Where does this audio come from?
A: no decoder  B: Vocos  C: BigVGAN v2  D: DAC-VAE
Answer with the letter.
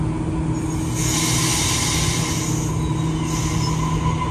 A